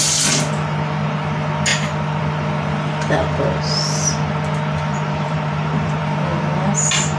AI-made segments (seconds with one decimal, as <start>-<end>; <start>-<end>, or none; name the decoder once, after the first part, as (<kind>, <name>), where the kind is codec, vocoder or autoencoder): 4.9-6.0 (vocoder, BigVGAN v2)